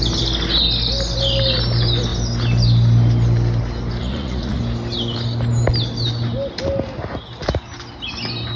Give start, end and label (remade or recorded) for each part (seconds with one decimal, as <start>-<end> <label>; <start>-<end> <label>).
0.0-4.0 recorded; 4.0-4.6 remade; 4.6-8.6 recorded